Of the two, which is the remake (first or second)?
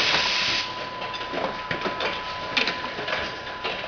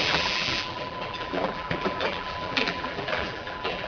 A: second